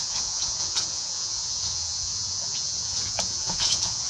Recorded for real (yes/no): no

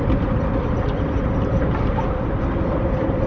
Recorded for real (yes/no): yes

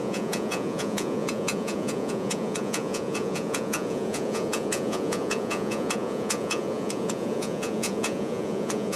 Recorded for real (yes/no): no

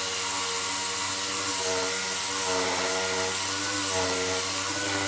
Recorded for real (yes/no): yes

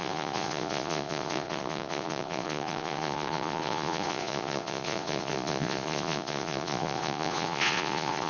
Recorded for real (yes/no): no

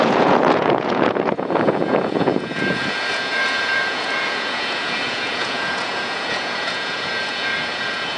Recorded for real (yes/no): no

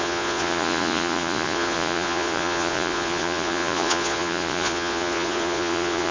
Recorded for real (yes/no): no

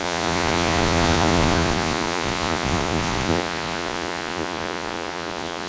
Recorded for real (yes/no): no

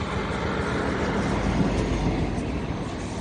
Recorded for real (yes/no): yes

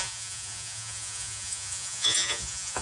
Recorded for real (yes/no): no